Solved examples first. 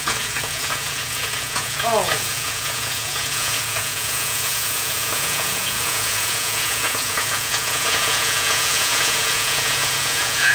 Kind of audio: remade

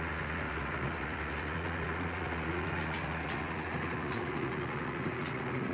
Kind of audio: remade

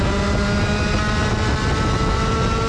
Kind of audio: recorded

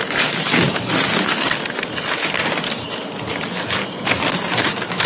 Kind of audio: recorded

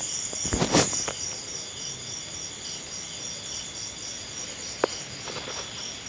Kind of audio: recorded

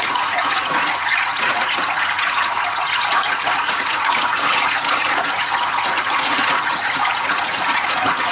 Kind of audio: remade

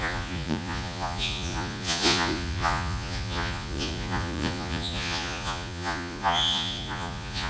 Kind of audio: remade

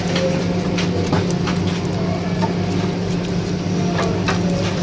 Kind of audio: recorded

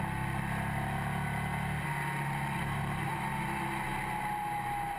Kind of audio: recorded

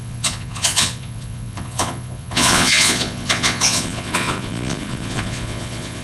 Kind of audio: remade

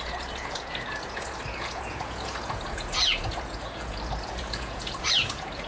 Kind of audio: remade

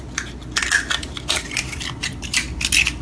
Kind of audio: recorded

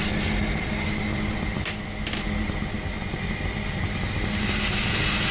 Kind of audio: recorded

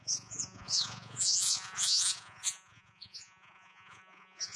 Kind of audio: remade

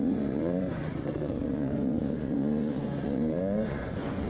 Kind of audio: remade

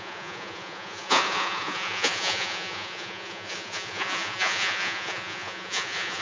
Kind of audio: remade